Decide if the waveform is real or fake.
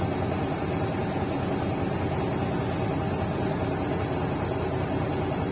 real